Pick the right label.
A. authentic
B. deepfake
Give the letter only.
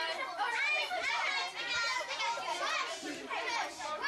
B